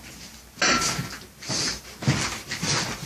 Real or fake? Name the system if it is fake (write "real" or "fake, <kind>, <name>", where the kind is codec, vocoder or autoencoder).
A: real